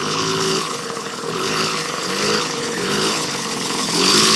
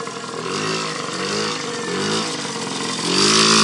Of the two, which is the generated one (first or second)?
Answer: first